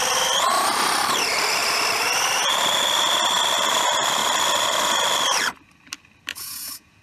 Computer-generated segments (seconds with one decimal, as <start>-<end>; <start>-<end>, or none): 6.3-7.0